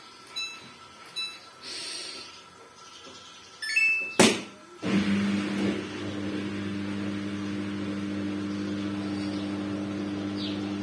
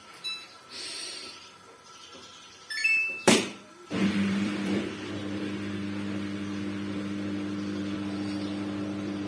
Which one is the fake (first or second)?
second